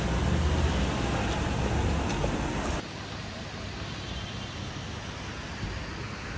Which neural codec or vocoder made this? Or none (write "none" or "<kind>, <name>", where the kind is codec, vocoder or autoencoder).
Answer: none